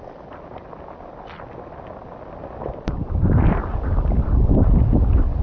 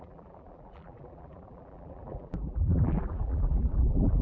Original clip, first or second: first